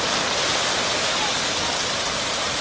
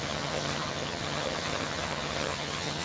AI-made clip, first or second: second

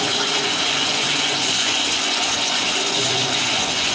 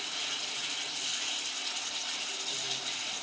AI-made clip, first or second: first